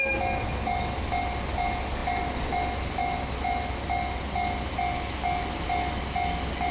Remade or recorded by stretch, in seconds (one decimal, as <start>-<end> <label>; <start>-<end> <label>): 0.0-6.7 recorded